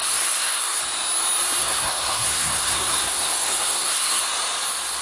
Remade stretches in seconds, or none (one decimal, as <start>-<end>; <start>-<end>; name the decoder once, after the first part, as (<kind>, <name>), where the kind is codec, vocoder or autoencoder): 0.0-0.8 (codec, SNAC); 1.6-4.2